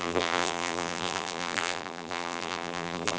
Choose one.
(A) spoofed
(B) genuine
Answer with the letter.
A